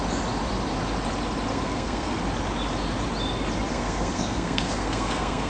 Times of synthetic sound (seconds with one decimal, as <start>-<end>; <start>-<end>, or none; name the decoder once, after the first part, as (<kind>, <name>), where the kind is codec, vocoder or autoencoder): 1.5-2.2 (codec, SNAC); 3.7-5.5